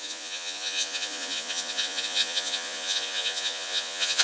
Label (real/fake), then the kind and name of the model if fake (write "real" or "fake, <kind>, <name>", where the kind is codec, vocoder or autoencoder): fake, vocoder, Vocos